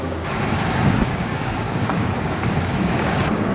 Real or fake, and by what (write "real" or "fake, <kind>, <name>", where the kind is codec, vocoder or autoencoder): fake, codec, DAC